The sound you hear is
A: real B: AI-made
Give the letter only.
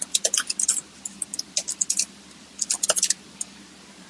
A